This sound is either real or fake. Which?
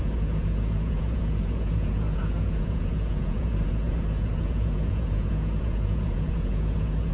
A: fake